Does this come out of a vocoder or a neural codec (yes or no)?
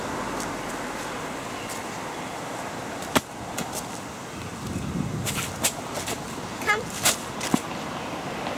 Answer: no